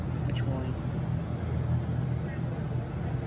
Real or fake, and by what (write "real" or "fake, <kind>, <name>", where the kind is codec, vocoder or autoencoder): real